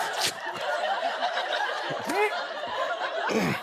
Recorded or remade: recorded